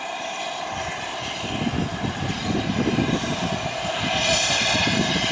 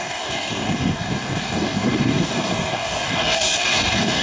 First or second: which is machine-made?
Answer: second